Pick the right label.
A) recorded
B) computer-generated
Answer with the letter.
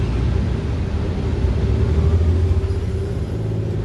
A